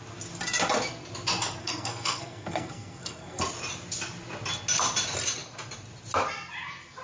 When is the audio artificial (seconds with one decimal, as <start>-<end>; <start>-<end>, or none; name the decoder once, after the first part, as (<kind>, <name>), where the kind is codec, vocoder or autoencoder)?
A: 1.6-3.4 (codec, SNAC)